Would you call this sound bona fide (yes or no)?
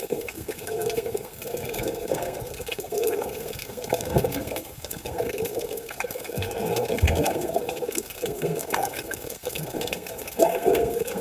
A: no